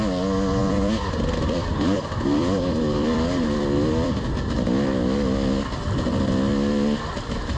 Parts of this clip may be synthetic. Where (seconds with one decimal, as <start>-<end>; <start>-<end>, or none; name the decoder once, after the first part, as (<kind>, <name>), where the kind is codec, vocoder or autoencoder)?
0.6-4.2 (vocoder, BigVGAN v2)